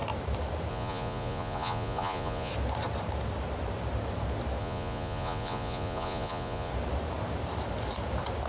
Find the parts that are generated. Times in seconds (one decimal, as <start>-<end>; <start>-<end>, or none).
0.7-2.5; 4.6-6.7